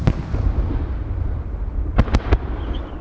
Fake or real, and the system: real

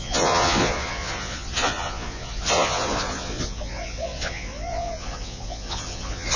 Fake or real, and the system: fake, vocoder, Vocos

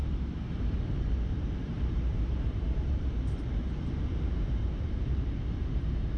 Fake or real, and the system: fake, vocoder, BigVGAN v2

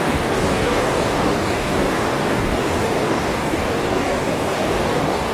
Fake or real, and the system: fake, codec, DAC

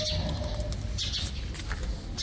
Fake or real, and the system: real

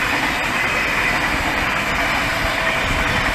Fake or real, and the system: real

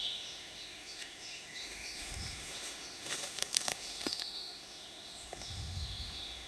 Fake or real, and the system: fake, autoencoder, DAC-VAE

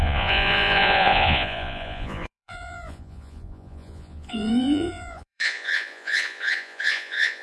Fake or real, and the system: fake, vocoder, Vocos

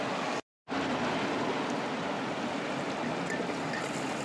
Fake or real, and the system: real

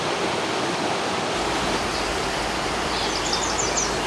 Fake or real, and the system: real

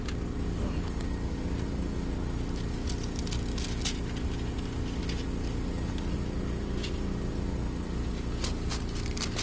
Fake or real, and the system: real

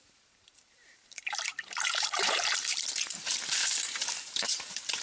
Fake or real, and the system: fake, vocoder, BigVGAN v2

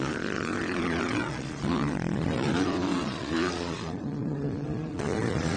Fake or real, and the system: fake, vocoder, Vocos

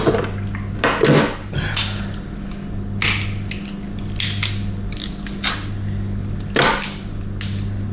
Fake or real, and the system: real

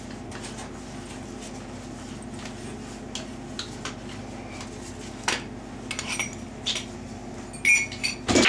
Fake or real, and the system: real